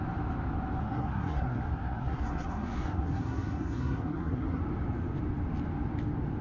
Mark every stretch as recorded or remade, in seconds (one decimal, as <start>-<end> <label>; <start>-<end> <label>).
0.0-0.8 recorded; 0.8-4.6 remade; 4.6-6.4 recorded